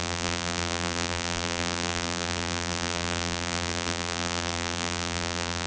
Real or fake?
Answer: fake